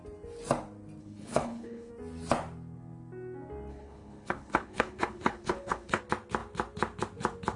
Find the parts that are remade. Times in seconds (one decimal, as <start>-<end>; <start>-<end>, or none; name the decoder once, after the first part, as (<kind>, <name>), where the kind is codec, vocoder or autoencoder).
1.0-1.9 (codec, HILCodec); 3.7-6.0